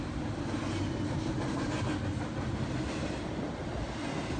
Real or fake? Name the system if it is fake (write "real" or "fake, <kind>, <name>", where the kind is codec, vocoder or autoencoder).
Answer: real